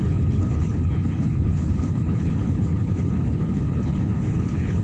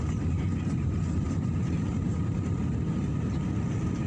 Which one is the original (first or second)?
second